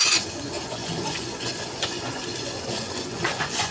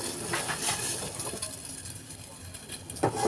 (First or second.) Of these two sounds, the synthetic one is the first